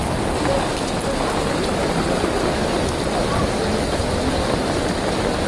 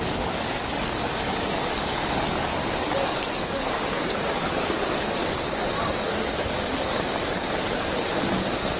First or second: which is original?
first